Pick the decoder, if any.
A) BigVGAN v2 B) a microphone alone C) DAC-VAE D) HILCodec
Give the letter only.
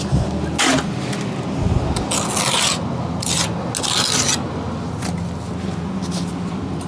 B